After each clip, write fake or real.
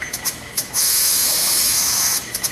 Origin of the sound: fake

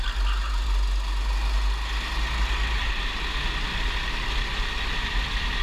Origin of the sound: real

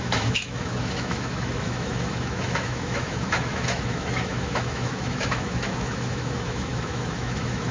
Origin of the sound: fake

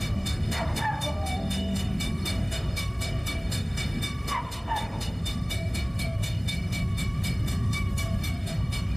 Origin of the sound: fake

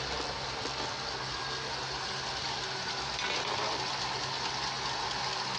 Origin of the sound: real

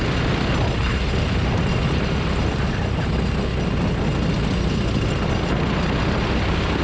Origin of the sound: real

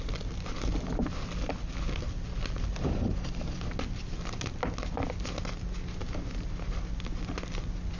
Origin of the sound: real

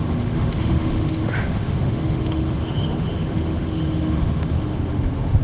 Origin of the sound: fake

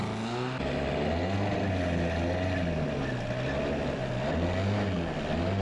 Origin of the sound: real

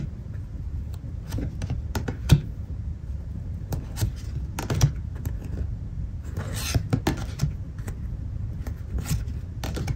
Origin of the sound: real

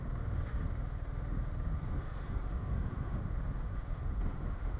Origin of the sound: fake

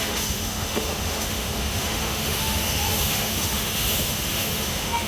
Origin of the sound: fake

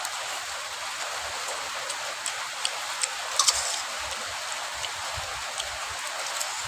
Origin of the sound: real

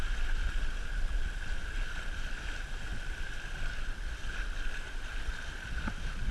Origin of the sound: real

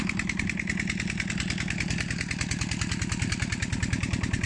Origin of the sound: real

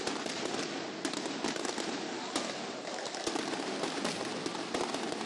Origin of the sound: real